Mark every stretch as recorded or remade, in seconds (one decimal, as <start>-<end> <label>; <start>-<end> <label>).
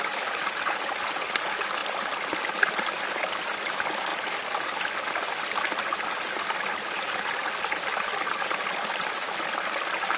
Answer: 0.0-10.2 recorded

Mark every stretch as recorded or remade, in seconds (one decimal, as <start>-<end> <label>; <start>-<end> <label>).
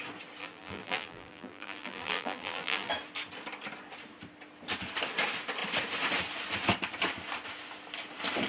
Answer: 0.0-0.4 recorded; 0.4-2.9 remade; 2.9-8.5 recorded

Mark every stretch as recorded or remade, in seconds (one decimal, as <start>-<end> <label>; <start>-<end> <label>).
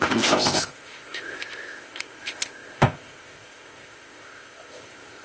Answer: 0.0-5.2 remade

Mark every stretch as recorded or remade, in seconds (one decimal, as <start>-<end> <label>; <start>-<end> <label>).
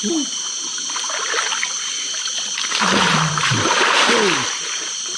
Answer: 0.0-5.2 recorded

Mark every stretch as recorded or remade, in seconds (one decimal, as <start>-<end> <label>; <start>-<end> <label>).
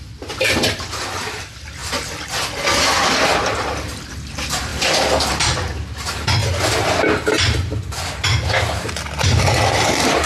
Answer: 0.0-10.3 recorded